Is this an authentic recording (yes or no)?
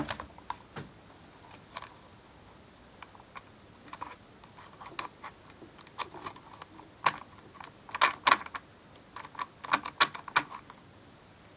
yes